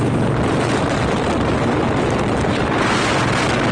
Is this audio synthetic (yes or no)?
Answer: no